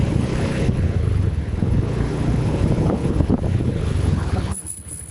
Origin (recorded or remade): remade